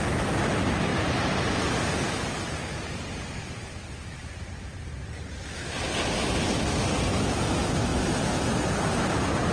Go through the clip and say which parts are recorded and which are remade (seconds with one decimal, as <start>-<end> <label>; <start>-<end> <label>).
0.0-0.9 recorded; 0.9-5.4 remade; 5.4-9.5 recorded